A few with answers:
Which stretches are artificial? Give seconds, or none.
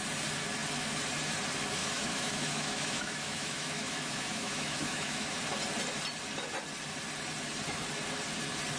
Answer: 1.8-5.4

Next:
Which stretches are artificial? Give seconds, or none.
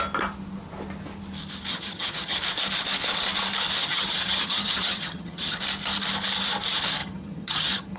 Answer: 1.7-2.4; 3.8-5.6; 7.0-8.0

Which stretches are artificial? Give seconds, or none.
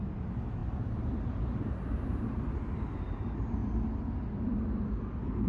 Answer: 0.0-3.6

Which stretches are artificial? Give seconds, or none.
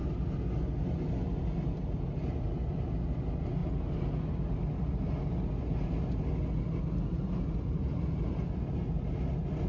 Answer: none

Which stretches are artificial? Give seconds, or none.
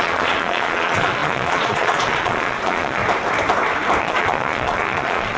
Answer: 0.0-3.0; 4.0-5.4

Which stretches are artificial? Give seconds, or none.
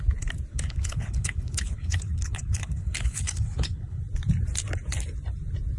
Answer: 0.5-4.0